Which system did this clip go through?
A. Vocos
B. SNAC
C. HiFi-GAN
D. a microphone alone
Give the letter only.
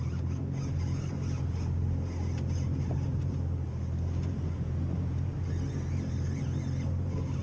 D